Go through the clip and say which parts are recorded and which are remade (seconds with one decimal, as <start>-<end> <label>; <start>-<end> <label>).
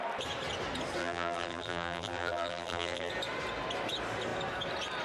0.0-1.0 recorded; 1.0-3.1 remade; 3.1-5.0 recorded